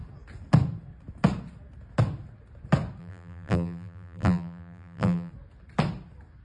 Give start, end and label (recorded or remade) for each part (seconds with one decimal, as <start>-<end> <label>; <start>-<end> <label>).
0.0-3.0 recorded; 3.0-5.3 remade; 5.3-6.4 recorded